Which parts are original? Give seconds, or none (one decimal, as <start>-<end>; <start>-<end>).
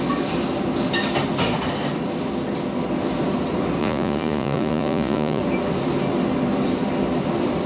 0.0-3.8; 5.4-7.7